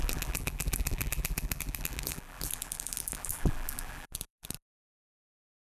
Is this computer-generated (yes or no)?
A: yes